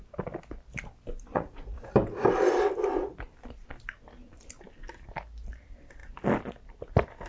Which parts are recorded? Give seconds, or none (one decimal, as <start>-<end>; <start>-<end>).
0.0-1.3; 1.9-7.3